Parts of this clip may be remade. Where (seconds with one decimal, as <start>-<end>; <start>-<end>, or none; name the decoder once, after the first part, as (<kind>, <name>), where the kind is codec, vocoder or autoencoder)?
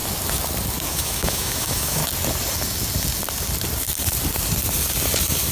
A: 0.9-2.0 (autoencoder, DAC-VAE)